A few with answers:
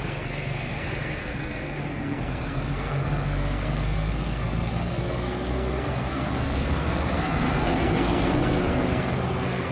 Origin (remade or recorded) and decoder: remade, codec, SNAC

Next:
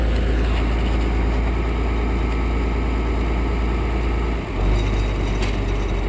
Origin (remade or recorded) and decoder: recorded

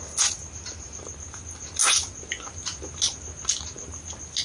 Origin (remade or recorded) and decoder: recorded